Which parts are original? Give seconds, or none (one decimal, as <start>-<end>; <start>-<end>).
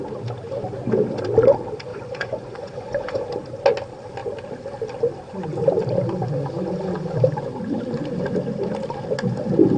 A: 0.0-1.9; 3.2-9.8